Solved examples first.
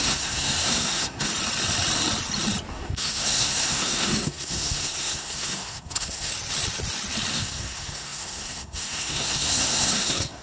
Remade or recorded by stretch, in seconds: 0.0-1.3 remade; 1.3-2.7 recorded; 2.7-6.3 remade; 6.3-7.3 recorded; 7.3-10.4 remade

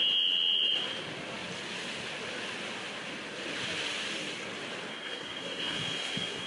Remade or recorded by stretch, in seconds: 0.0-4.9 recorded; 4.9-6.5 remade

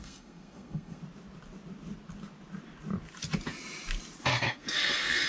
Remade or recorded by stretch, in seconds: 0.0-1.0 remade; 1.0-4.2 recorded; 4.2-5.3 remade

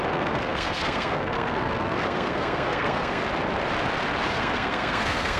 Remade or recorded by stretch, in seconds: 0.0-3.2 remade; 3.2-4.3 recorded; 4.3-5.4 remade

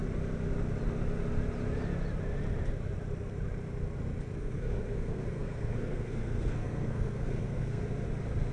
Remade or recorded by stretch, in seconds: 0.0-4.3 recorded; 4.3-7.8 remade; 7.8-8.5 recorded

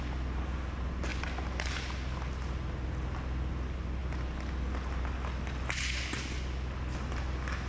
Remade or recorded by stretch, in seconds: 0.0-7.7 recorded

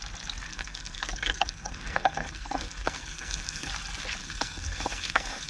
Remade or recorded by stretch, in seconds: 0.0-0.5 recorded; 0.5-3.7 remade; 3.7-4.2 recorded; 4.2-5.5 remade